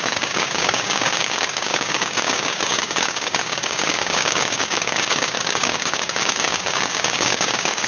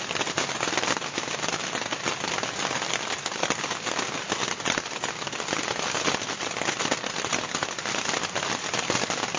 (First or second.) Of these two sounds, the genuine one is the second